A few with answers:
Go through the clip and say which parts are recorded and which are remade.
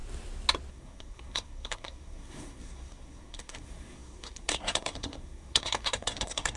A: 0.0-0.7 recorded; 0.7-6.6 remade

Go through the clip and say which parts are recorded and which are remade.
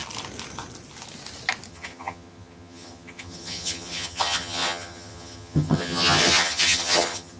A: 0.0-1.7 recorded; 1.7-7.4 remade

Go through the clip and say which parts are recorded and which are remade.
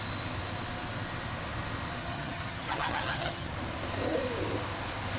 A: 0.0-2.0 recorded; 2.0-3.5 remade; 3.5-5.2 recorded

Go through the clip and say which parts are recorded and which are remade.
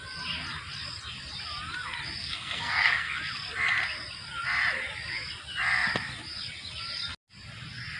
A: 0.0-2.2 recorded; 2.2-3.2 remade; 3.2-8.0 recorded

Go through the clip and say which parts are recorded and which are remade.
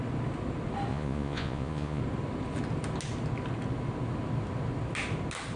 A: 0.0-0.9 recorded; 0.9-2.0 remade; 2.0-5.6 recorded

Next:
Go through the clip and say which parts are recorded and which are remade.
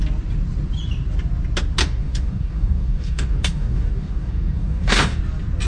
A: 0.0-1.8 recorded; 1.8-5.2 remade; 5.2-5.7 recorded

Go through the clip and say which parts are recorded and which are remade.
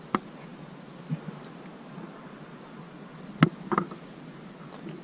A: 0.0-5.0 recorded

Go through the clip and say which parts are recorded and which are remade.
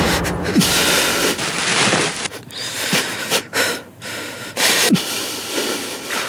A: 0.0-1.7 recorded; 1.7-5.5 remade; 5.5-6.3 recorded